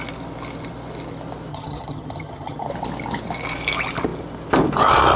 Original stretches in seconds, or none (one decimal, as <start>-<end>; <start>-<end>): 0.0-1.5; 2.7-5.2